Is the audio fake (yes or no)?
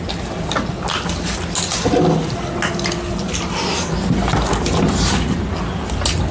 no